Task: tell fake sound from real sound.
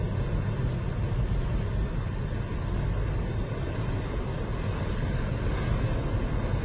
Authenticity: real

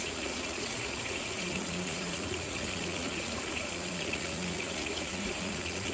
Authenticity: fake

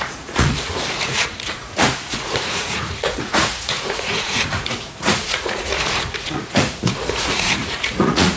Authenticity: fake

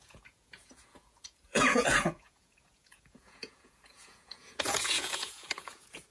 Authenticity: fake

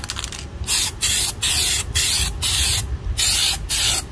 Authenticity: real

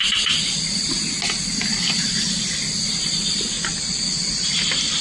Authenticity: real